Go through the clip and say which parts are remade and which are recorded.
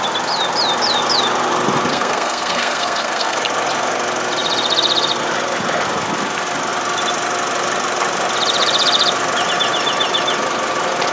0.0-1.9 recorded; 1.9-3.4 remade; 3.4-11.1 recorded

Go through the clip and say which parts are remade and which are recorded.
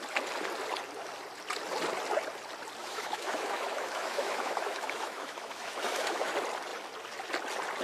0.0-2.8 recorded; 2.8-6.3 remade; 6.3-7.8 recorded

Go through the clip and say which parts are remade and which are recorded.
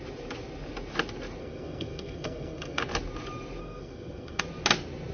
0.0-1.4 recorded; 1.4-2.8 remade; 2.8-3.6 recorded; 3.6-4.4 remade; 4.4-5.1 recorded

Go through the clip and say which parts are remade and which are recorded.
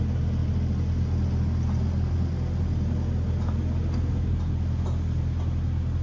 0.0-6.0 recorded